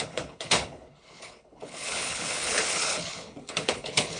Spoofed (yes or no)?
yes